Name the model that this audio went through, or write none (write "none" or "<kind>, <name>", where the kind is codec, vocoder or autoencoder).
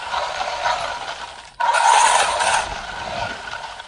none